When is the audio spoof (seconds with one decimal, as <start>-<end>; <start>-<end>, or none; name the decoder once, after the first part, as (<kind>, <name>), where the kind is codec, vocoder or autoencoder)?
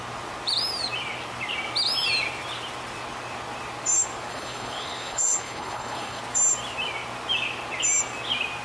4.3-6.2 (codec, HILCodec)